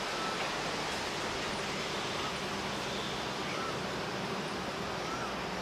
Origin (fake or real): real